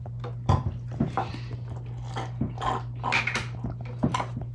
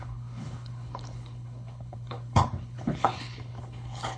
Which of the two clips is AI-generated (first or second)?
second